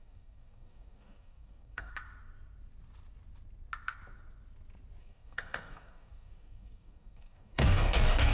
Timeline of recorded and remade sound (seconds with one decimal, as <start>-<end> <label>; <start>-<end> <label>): 0.0-1.9 remade; 1.9-5.0 recorded; 5.0-8.3 remade